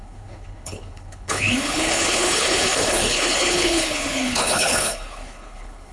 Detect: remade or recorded remade